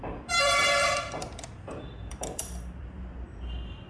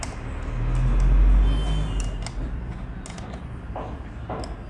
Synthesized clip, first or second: first